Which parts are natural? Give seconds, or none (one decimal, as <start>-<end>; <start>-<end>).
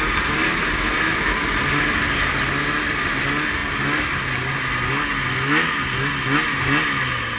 0.0-7.4